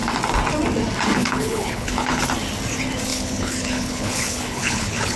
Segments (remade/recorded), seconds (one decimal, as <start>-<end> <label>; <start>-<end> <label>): 0.0-1.2 recorded; 1.2-2.2 remade; 2.2-3.1 recorded; 3.1-5.2 remade